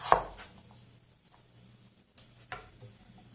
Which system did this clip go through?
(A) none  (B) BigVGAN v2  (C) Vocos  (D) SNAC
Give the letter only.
A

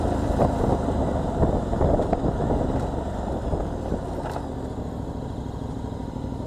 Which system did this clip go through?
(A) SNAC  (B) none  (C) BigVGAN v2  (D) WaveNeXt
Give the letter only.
B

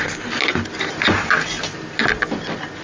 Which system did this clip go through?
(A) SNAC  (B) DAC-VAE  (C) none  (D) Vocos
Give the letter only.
C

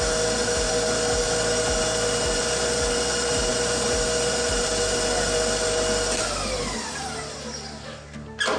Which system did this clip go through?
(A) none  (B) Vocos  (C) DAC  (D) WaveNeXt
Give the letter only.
A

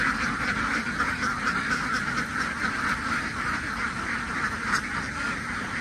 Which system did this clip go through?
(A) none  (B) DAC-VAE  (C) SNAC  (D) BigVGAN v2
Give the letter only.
A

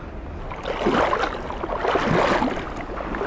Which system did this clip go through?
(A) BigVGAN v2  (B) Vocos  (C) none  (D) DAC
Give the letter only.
C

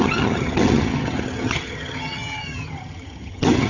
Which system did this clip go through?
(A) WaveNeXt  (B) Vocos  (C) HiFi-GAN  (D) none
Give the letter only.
C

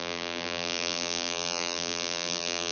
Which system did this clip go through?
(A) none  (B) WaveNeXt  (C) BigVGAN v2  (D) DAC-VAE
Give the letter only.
C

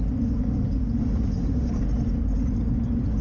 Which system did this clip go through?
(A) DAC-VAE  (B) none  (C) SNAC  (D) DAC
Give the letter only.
B